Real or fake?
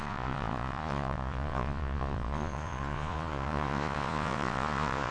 fake